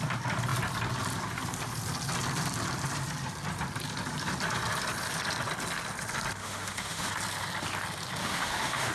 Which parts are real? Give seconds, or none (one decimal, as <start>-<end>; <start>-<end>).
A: 0.0-6.4; 7.1-8.2